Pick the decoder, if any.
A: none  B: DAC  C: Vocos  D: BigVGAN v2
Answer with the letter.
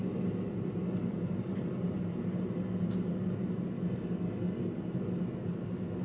A